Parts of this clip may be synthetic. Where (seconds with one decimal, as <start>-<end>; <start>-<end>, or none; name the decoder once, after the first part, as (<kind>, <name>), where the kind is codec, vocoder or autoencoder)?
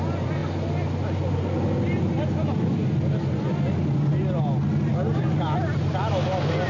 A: 4.9-5.6 (vocoder, BigVGAN v2)